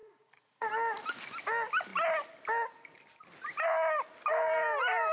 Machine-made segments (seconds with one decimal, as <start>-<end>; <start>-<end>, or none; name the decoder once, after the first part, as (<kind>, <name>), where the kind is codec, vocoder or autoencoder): 0.0-0.7 (vocoder, Vocos)